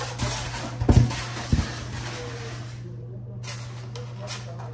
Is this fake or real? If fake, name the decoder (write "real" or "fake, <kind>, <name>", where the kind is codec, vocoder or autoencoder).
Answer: real